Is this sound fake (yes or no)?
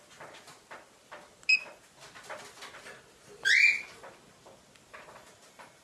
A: no